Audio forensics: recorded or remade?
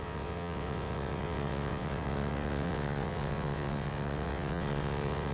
remade